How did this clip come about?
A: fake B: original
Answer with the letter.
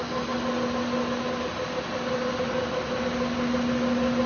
B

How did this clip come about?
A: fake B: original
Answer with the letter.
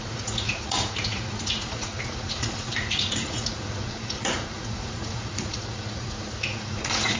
A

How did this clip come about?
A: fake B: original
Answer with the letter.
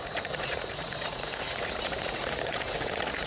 A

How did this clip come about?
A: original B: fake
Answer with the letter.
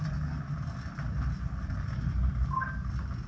A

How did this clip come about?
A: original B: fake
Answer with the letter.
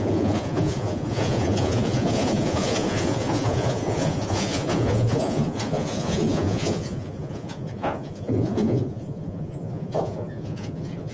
B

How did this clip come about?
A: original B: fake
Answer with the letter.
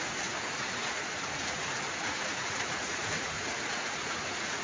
B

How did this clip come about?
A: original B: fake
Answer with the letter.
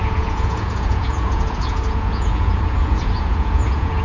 B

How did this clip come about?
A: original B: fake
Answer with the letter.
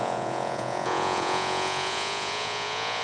B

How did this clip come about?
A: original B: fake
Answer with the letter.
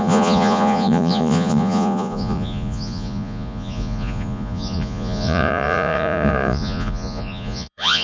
B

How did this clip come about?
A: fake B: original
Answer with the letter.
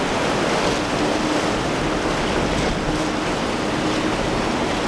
B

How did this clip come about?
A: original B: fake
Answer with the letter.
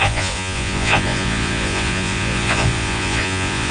B